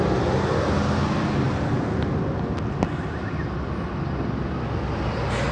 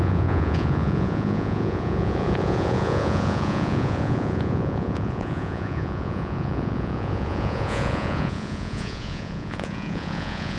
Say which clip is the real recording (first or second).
first